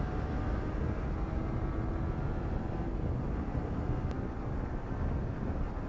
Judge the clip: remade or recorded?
recorded